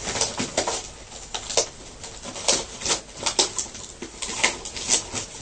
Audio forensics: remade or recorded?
recorded